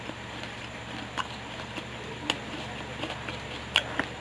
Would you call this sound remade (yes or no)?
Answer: yes